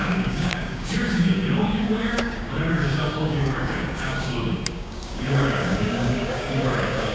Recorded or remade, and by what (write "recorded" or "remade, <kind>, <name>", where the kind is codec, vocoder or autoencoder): remade, codec, DAC